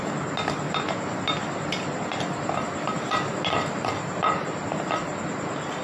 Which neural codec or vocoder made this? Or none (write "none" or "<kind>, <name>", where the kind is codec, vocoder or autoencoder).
none